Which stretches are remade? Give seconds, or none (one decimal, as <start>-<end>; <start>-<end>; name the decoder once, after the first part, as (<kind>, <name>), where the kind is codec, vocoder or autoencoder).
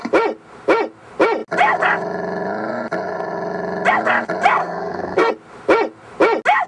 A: 4.6-5.3 (codec, SNAC)